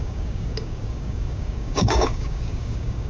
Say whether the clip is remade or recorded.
remade